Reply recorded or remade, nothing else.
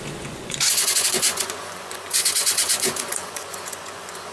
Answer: remade